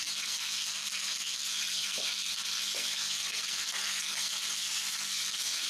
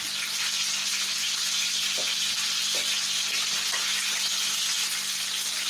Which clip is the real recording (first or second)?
second